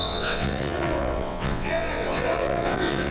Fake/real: fake